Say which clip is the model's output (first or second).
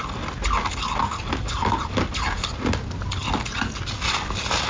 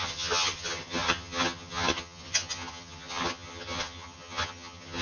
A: second